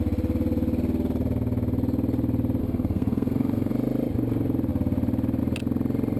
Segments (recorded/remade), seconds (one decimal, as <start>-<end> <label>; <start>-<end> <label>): 0.0-2.6 recorded; 2.6-3.7 remade; 3.7-6.2 recorded

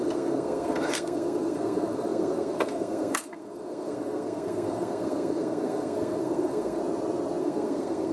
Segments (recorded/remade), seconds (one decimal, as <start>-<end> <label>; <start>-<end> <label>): 0.0-6.8 remade; 6.8-7.4 recorded; 7.4-8.1 remade

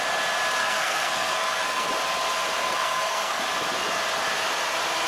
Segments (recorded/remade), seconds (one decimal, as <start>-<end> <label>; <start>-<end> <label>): 0.0-0.6 recorded; 0.6-1.9 remade; 1.9-2.6 recorded; 2.6-3.4 remade; 3.4-5.1 recorded

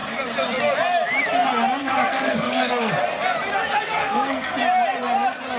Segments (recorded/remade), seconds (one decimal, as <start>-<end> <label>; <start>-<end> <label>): 0.0-1.8 recorded; 1.8-2.9 remade; 2.9-4.0 recorded; 4.0-4.6 remade; 4.6-5.6 recorded

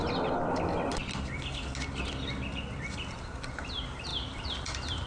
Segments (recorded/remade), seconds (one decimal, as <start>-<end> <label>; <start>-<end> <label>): 0.0-5.1 recorded

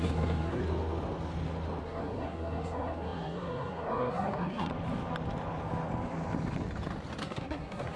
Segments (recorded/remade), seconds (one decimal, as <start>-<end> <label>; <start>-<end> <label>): 0.0-0.6 remade; 0.6-1.8 recorded; 1.8-4.7 remade; 4.7-7.2 recorded; 7.2-8.0 remade

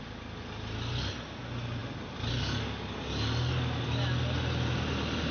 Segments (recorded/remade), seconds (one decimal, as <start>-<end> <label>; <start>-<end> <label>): 0.0-5.3 recorded